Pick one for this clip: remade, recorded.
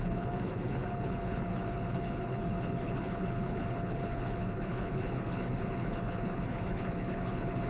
remade